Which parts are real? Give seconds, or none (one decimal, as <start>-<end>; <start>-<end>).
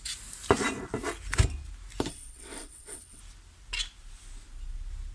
0.0-2.1; 3.2-5.1